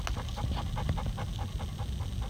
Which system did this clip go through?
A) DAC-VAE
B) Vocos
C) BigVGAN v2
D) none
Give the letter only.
D